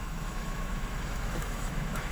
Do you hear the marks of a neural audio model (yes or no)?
yes